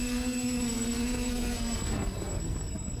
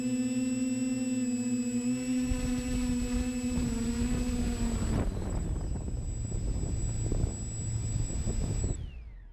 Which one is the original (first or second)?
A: second